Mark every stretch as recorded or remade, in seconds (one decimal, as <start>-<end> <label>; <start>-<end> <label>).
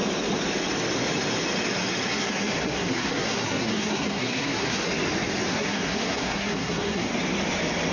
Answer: 0.0-2.1 recorded; 2.1-4.9 remade; 4.9-5.5 recorded; 5.5-7.1 remade; 7.1-7.9 recorded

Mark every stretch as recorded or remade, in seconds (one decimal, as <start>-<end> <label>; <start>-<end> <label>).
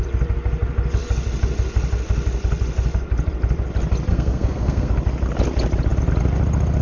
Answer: 0.0-4.1 recorded; 4.1-4.9 remade; 4.9-6.8 recorded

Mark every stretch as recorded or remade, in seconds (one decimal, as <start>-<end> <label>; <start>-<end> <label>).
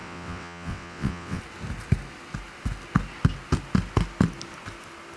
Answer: 0.0-1.4 remade; 1.4-5.2 recorded